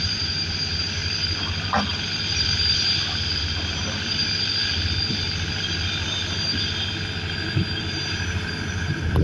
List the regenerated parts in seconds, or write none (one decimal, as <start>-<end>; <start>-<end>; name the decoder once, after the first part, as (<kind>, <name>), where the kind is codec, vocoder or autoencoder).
0.0-1.0 (vocoder, BigVGAN v2); 1.8-4.6; 7.8-9.2